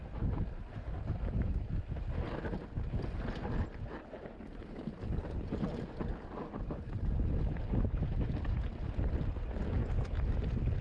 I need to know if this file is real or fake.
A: real